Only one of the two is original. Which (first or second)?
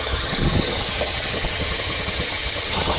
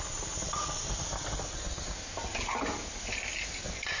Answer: second